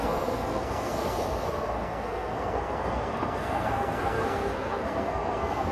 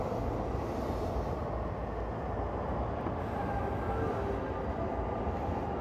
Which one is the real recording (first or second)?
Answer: second